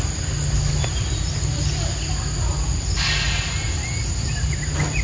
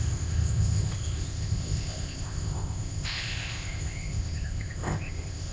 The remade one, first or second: second